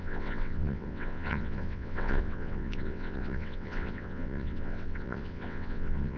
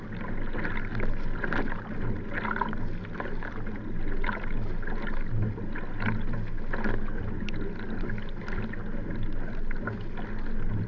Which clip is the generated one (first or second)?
first